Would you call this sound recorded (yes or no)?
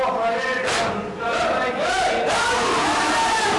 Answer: yes